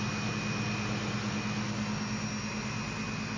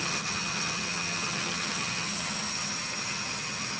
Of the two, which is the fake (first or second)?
second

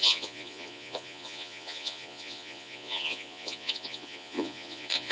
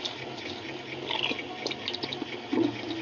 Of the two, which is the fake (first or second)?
first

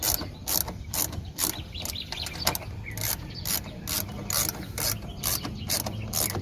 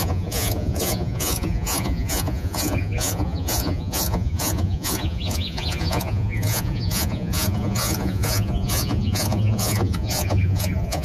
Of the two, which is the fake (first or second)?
second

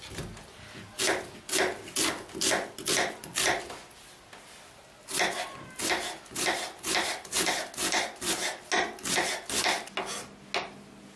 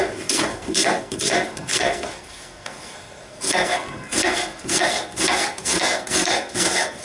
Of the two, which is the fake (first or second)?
second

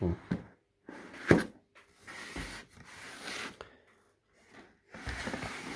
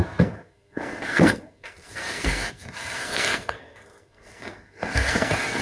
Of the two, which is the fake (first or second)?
second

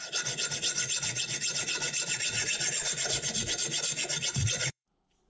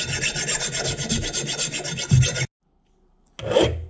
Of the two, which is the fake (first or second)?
first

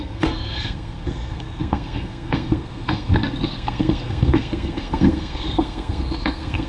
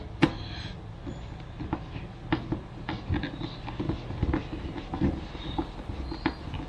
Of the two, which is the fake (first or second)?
first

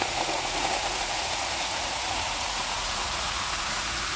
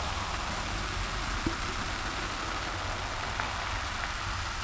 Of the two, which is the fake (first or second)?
first